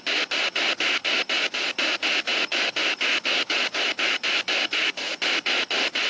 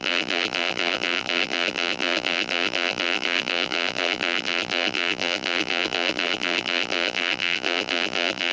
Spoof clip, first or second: second